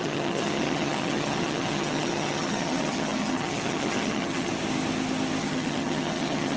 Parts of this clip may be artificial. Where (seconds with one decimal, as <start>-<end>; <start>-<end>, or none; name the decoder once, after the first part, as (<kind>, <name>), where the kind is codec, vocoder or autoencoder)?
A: 0.0-4.5 (vocoder, HiFi-GAN); 5.4-6.6